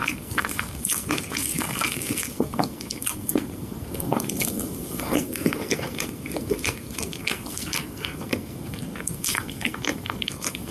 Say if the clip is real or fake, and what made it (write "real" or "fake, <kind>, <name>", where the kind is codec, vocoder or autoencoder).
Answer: fake, codec, SNAC